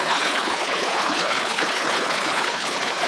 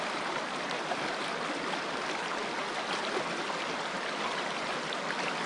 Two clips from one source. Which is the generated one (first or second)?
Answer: first